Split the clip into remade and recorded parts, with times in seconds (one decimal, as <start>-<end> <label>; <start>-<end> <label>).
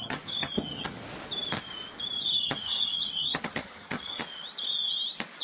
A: 0.0-1.0 remade; 1.0-2.2 recorded; 2.2-4.2 remade; 4.2-5.4 recorded